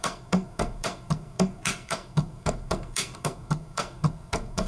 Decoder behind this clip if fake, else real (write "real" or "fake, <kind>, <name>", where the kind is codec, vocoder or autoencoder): fake, codec, SNAC